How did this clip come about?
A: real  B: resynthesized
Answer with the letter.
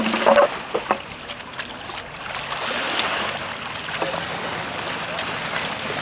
A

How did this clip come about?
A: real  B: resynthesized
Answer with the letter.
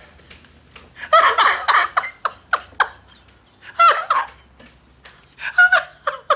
A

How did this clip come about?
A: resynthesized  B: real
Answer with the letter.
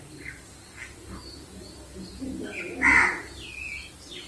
B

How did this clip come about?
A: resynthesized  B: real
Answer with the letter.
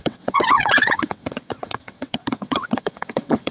A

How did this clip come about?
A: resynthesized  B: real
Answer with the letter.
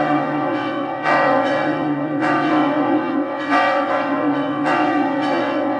A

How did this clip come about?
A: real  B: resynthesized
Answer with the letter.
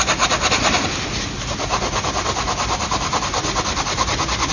A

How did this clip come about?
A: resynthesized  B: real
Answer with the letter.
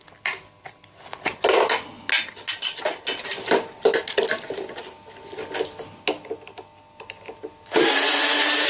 B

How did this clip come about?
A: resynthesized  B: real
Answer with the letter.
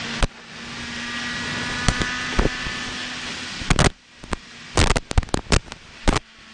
B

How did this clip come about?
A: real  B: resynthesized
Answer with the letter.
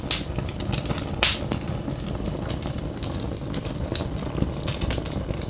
A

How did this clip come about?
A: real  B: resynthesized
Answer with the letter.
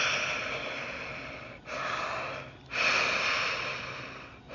A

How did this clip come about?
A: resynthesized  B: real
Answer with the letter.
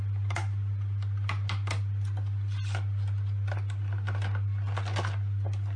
B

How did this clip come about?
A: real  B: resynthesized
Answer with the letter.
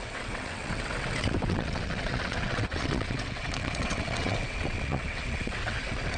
B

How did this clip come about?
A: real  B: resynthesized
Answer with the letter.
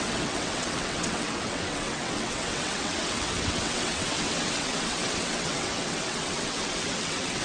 B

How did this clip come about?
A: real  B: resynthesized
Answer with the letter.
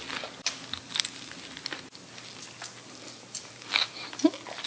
A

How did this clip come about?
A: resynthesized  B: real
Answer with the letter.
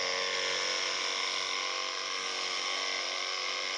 B